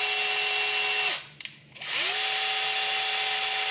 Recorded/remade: recorded